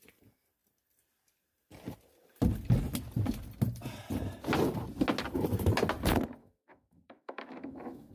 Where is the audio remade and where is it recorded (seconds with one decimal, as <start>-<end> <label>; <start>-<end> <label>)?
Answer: 0.0-6.4 recorded; 6.4-8.1 remade